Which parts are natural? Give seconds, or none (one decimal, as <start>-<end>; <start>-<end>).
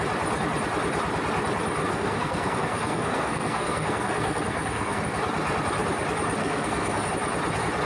0.0-1.8; 5.0-6.4; 7.1-7.8